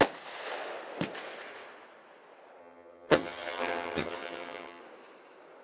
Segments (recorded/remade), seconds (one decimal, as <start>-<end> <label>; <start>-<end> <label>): 0.0-2.6 recorded; 2.6-4.8 remade; 4.8-5.6 recorded